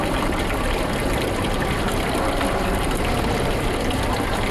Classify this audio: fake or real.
fake